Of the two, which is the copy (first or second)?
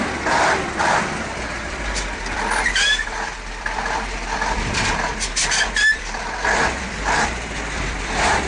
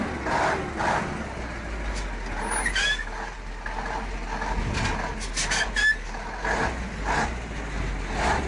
first